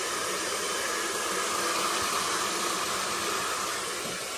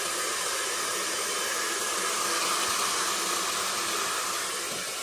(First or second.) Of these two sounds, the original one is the second